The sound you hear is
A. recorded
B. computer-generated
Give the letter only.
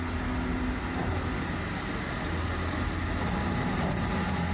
A